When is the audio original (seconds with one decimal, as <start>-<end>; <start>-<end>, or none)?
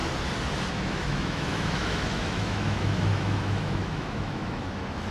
0.0-0.7